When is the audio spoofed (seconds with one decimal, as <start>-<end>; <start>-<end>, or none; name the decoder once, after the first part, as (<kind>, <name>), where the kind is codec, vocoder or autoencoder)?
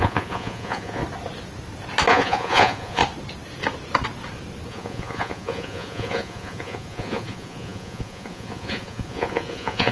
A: 0.0-1.0 (vocoder, Vocos); 2.1-3.0; 4.7-9.9